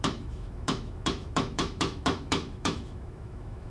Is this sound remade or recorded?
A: remade